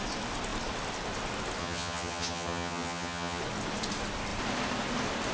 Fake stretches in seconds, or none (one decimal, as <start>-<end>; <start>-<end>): 1.6-3.4